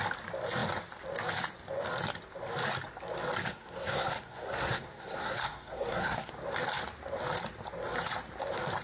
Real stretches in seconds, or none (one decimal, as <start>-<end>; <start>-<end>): 0.0-3.5; 6.3-8.8